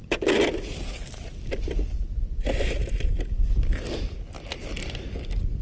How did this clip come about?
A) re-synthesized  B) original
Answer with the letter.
B